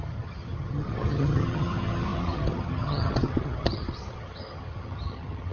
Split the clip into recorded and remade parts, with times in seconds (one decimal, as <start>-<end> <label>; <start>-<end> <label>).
0.0-5.5 remade